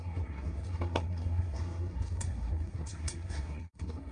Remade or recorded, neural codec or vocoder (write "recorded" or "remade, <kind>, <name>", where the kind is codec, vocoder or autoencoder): remade, codec, SNAC